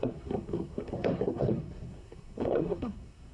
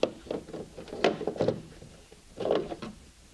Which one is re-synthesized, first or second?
first